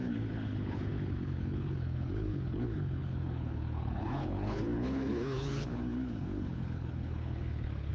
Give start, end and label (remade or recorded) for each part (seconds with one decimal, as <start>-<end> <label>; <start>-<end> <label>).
0.0-7.9 remade